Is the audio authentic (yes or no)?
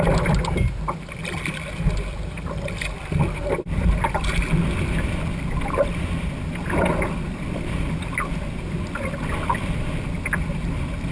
yes